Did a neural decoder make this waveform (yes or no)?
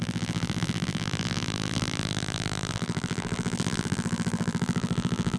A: yes